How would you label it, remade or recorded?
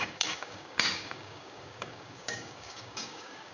remade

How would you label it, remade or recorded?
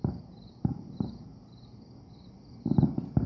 recorded